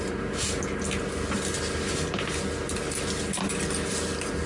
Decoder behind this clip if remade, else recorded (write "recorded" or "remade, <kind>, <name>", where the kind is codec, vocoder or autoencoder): recorded